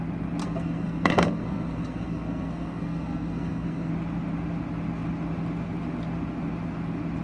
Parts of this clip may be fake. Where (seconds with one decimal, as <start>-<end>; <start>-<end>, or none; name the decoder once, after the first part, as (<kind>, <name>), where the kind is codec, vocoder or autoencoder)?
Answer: 0.4-3.9 (codec, SNAC)